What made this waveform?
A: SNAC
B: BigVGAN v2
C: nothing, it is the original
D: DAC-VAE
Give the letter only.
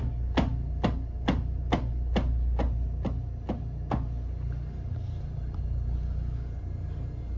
C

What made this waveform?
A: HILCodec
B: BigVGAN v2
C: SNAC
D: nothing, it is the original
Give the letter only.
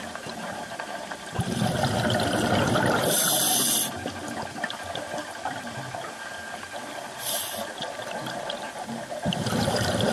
B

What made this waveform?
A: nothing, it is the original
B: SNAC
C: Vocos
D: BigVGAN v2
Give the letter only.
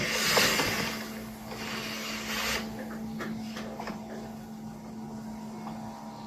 A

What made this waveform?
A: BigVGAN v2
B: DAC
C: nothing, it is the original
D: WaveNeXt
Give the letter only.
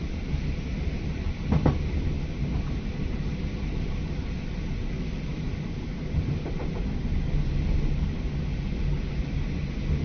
C